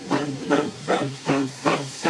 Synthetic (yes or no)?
yes